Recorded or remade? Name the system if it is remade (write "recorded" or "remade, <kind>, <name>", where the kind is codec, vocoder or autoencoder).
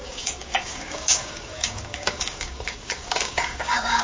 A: remade, codec, DAC